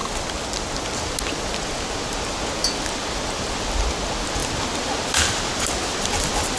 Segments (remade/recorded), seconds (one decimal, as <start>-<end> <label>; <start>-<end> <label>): 0.0-6.6 recorded